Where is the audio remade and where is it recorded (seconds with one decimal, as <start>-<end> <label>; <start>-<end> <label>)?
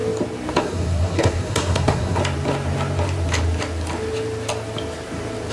0.0-0.6 recorded; 0.6-2.2 remade; 2.2-5.5 recorded